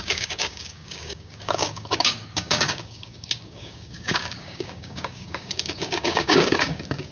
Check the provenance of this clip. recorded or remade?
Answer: remade